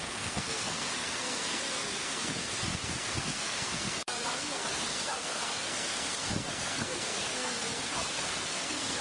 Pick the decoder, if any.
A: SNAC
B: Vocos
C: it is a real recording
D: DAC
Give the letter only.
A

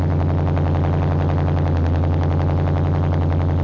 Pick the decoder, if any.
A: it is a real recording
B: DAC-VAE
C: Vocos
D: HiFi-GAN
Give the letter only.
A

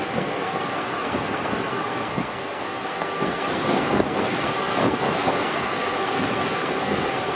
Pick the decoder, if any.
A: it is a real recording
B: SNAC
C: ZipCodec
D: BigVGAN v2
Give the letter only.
B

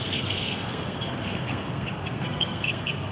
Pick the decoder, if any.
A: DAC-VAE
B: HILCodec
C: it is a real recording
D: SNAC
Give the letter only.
D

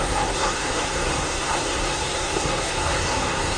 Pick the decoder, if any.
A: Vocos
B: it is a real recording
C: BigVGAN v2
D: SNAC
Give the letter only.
D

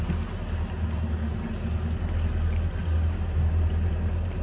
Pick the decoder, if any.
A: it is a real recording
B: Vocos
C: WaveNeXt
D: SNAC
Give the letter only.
A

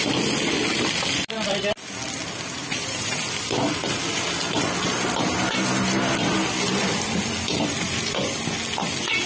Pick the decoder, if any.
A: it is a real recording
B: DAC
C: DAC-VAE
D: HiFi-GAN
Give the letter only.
A